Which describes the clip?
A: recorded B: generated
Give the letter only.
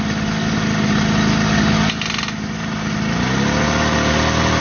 A